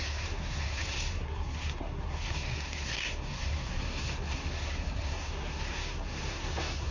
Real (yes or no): no